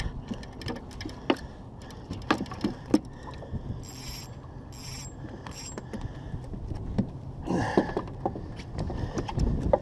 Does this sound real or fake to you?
real